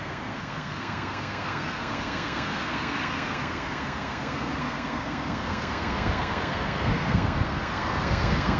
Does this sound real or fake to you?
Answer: fake